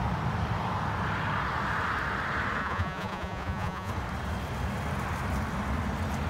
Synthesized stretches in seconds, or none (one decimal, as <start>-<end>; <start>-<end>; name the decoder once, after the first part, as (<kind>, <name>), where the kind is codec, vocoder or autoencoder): 2.6-3.9 (vocoder, Vocos)